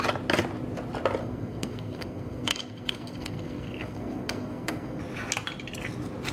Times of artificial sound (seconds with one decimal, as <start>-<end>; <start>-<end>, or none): 1.2-5.0